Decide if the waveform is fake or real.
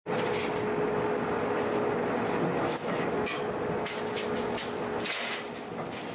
real